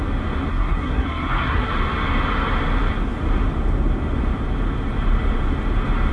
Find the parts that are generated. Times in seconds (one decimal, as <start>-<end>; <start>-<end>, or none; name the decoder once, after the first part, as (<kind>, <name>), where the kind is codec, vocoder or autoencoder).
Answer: 0.5-1.7 (codec, SNAC)